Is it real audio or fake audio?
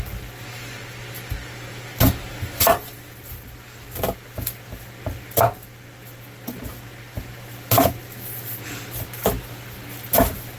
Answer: real